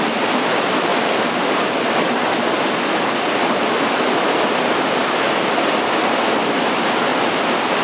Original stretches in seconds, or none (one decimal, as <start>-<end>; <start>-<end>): 0.9-4.7